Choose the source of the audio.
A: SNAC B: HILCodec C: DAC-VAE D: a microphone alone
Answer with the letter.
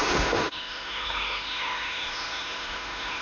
C